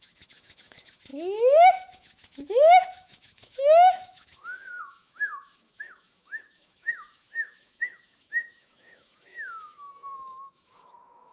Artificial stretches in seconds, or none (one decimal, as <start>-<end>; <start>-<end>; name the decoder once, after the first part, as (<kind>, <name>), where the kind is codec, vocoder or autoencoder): 0.0-11.3 (autoencoder, DAC-VAE)

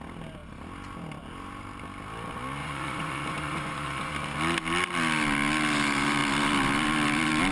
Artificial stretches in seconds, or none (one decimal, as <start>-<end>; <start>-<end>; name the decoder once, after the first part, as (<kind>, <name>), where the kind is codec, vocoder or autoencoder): 2.6-4.1 (vocoder, Vocos)

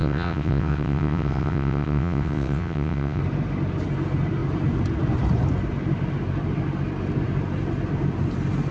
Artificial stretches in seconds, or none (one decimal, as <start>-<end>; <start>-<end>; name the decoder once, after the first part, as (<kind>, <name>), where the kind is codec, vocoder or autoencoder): 0.0-3.2 (vocoder, WaveNeXt)

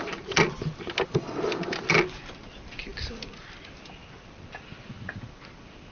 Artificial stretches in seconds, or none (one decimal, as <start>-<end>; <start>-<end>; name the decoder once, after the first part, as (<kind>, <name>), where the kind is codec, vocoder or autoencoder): none

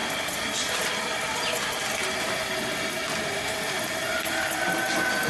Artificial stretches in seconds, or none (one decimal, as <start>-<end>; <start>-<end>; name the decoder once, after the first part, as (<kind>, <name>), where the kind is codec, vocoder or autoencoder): none

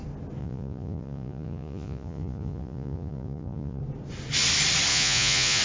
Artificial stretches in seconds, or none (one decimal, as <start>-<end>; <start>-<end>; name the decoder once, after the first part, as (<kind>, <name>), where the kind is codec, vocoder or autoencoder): 0.4-3.8 (vocoder, Vocos); 4.9-5.6

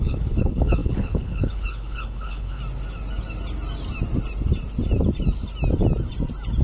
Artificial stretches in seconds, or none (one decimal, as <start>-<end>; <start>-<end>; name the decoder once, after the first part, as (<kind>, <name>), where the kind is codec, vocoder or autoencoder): 0.0-2.6 (codec, HILCodec)

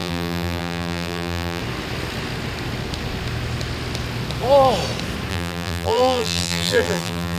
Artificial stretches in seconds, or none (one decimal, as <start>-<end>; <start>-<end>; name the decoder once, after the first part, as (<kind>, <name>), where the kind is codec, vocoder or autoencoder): 0.0-1.6 (vocoder, BigVGAN v2); 5.3-7.4